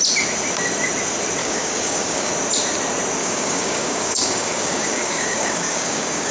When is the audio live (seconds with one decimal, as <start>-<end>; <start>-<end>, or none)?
0.0-1.4; 2.3-3.2